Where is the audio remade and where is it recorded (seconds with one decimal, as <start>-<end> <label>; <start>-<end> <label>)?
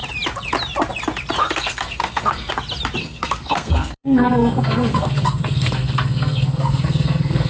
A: 0.0-1.4 recorded; 1.4-2.5 remade; 2.5-3.0 recorded; 3.0-7.5 remade